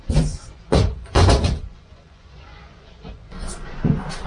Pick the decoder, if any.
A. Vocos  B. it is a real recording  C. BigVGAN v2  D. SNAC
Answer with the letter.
A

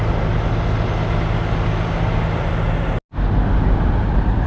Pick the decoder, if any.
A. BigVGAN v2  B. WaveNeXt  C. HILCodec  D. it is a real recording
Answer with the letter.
D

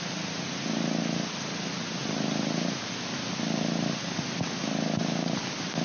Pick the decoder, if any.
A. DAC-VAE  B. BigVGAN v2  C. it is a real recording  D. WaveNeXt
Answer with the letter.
C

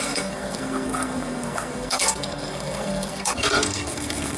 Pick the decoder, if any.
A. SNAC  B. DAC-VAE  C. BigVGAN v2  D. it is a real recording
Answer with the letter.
A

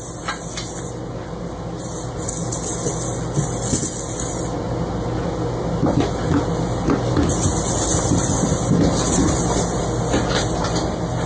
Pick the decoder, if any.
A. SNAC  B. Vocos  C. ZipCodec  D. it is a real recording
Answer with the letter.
D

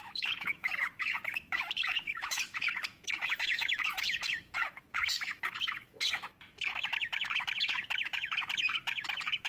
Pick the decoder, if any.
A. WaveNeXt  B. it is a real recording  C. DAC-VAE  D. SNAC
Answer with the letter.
C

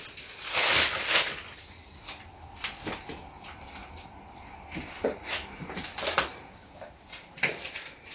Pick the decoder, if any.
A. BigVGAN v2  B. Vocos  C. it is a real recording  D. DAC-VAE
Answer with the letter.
C